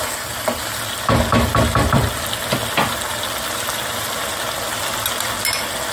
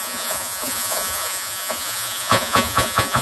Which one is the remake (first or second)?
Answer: second